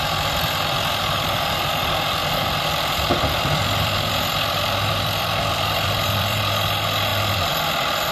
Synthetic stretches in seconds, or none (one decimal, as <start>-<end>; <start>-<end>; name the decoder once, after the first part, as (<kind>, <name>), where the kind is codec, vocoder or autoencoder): 0.0-1.7 (vocoder, BigVGAN v2); 2.2-6.4; 7.1-8.1